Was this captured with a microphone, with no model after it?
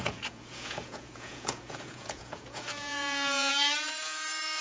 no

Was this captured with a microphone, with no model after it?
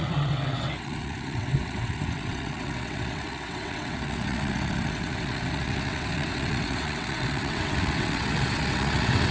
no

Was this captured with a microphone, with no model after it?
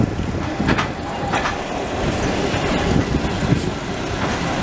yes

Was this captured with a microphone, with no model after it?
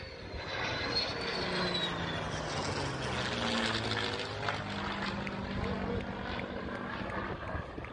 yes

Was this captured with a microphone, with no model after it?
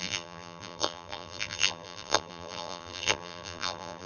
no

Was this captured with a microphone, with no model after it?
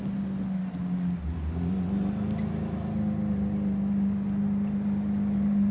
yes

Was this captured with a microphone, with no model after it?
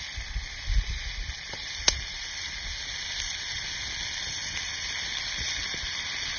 yes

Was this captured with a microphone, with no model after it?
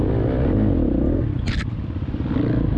yes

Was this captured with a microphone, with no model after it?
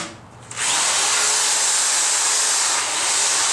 yes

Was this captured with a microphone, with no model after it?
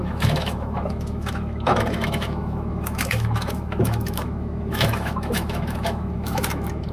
no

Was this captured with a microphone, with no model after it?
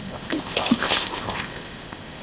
no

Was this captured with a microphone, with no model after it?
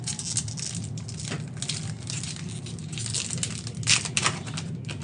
yes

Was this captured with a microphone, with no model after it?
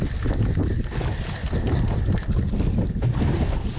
yes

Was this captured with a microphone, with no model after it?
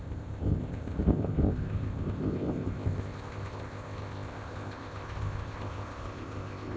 no